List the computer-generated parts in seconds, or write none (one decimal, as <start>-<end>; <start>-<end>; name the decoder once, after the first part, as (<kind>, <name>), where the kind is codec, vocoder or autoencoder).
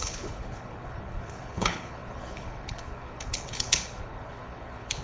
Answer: 0.0-5.0 (codec, HILCodec)